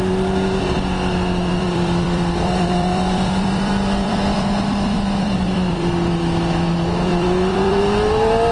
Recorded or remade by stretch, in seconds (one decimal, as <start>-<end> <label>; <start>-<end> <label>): 0.0-1.5 recorded; 1.5-6.1 remade; 6.1-7.1 recorded; 7.1-7.8 remade; 7.8-8.5 recorded